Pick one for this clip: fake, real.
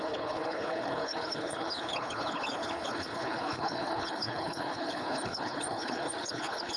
fake